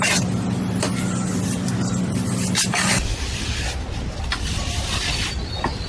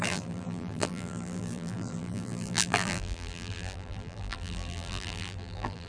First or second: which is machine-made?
second